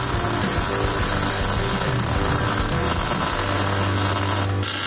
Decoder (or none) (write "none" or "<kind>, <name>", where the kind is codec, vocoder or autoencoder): none